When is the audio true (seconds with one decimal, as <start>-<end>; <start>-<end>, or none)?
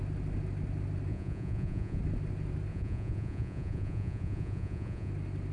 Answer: 0.0-1.1; 2.0-2.7; 5.1-5.5